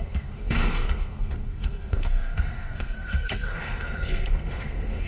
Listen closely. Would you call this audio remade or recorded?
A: remade